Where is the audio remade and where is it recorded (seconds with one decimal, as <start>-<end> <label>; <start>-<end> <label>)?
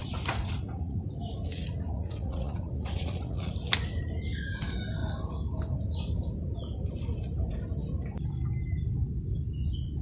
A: 0.0-1.0 remade; 1.0-1.5 recorded; 1.5-3.5 remade; 3.5-10.0 recorded